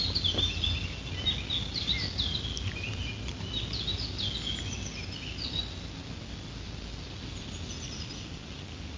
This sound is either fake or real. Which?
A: real